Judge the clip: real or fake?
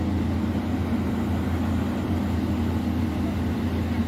real